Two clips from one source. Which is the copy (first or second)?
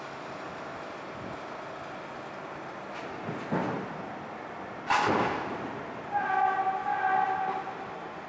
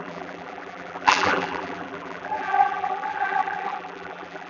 second